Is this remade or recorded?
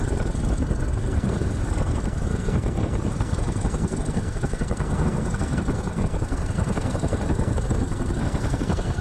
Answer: remade